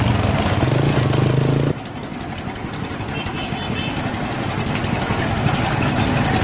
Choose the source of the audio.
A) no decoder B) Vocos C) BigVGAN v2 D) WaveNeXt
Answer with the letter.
A